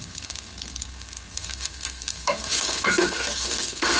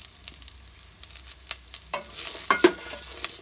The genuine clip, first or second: second